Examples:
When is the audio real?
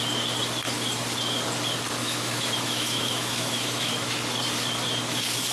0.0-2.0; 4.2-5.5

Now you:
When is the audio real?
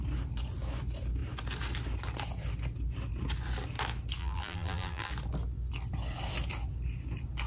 0.0-4.2; 5.1-7.5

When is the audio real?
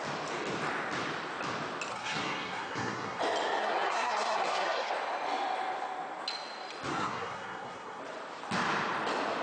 0.0-1.9; 3.2-3.6; 4.9-6.9; 8.0-9.4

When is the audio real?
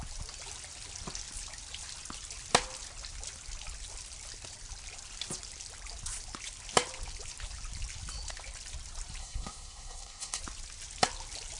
0.0-9.2; 10.4-11.6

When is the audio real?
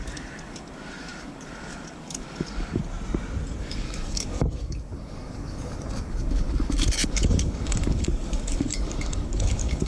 2.8-3.6